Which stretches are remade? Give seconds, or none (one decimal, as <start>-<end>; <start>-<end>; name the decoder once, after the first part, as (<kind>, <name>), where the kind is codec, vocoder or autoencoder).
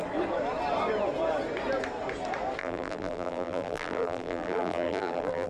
2.6-5.5 (vocoder, BigVGAN v2)